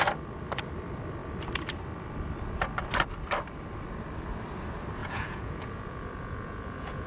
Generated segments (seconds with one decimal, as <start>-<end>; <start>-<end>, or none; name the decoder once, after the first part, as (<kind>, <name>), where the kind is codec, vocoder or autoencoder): 5.0-7.1 (vocoder, Vocos)